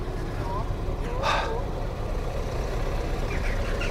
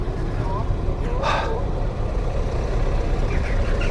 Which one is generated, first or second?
second